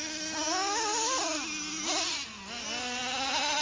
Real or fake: real